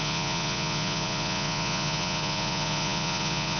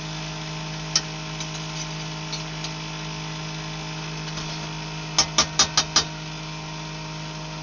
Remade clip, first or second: first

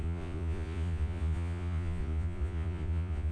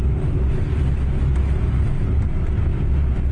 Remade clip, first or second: first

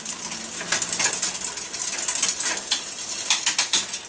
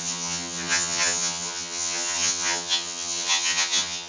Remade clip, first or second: second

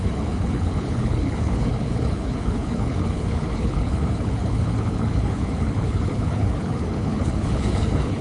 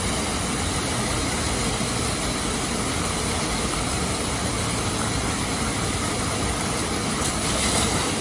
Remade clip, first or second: first